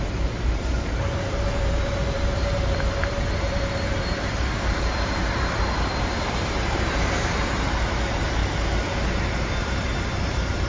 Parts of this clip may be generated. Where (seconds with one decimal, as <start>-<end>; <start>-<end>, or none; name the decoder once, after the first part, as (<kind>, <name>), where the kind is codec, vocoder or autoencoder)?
0.0-8.4 (vocoder, BigVGAN v2); 9.6-10.7